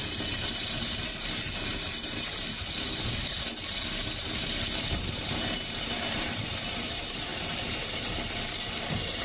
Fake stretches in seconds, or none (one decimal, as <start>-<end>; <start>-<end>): 0.0-3.5; 4.9-7.3; 8.0-9.2